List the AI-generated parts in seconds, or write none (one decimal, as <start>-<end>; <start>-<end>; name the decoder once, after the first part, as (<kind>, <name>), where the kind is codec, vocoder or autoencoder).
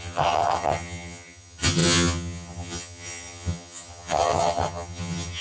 0.0-5.4 (vocoder, HiFi-GAN)